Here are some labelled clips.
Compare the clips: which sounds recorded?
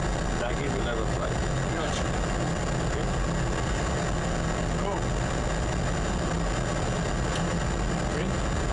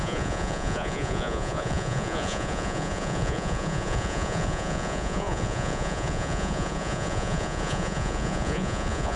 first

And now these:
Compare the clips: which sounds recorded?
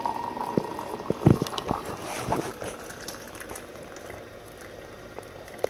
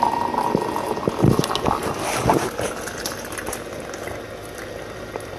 second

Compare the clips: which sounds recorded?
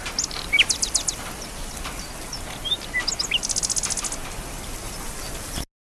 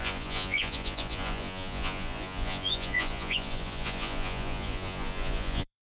first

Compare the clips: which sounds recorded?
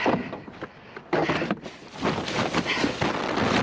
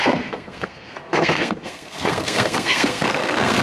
first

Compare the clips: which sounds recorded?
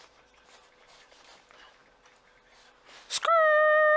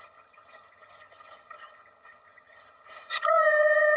first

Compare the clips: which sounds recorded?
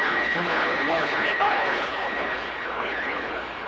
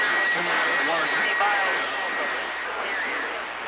second